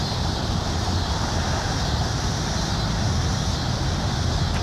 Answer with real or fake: real